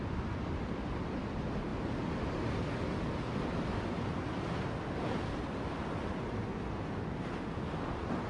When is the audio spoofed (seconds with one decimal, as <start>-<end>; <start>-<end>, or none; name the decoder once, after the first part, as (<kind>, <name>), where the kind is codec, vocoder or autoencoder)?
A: none